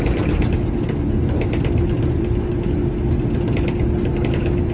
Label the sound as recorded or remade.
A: recorded